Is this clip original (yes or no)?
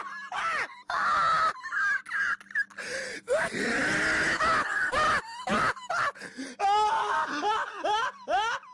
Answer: yes